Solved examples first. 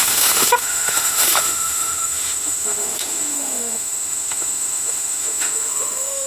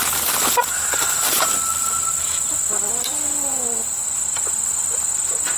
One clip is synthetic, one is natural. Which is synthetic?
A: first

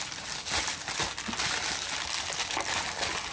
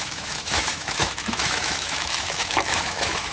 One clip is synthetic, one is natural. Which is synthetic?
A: second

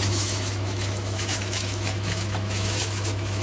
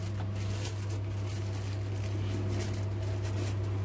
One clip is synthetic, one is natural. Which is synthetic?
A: first